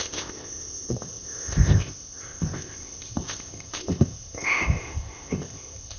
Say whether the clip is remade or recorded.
remade